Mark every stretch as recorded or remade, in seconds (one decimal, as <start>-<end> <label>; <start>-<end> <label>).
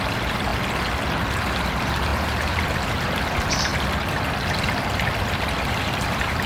0.0-0.5 remade; 0.5-1.6 recorded; 1.6-3.7 remade; 3.7-5.7 recorded; 5.7-6.5 remade